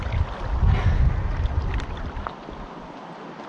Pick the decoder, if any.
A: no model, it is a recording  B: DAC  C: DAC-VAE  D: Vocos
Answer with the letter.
A